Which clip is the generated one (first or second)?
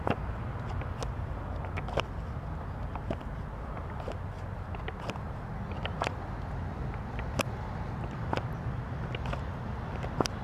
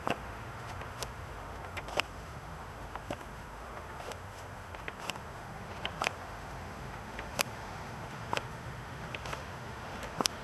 second